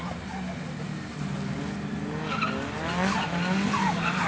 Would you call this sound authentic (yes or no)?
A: yes